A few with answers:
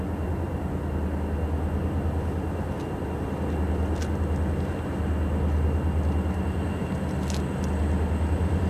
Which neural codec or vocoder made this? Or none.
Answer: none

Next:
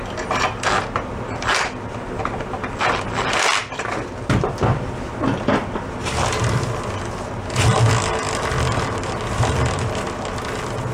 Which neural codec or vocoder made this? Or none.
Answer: none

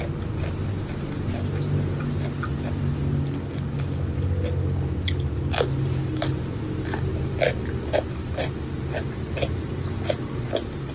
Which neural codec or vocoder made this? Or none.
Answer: none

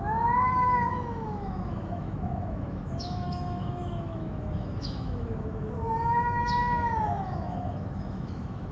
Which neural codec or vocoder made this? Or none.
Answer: autoencoder, DAC-VAE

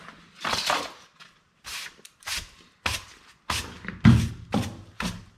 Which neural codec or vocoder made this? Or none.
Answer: none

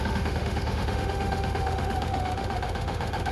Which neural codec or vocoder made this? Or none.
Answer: autoencoder, DAC-VAE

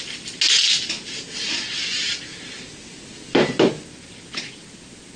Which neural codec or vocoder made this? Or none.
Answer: none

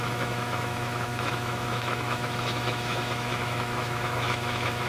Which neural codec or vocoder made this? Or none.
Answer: autoencoder, DAC-VAE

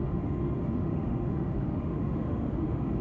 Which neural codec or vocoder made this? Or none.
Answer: autoencoder, DAC-VAE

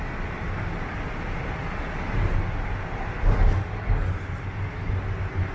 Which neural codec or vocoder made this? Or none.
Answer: none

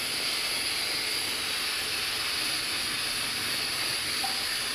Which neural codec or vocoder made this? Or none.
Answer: none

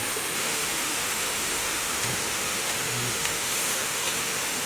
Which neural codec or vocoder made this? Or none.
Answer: autoencoder, DAC-VAE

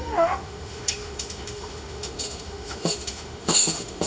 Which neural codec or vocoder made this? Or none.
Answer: autoencoder, DAC-VAE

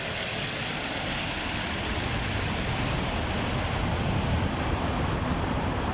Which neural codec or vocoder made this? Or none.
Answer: none